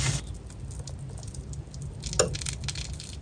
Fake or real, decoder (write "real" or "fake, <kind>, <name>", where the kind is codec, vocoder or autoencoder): real